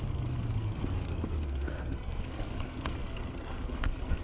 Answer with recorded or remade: remade